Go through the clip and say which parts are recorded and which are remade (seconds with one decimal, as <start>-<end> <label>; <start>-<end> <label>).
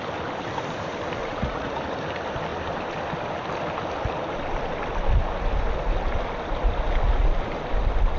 0.0-1.2 recorded; 1.2-1.8 remade; 1.8-8.2 recorded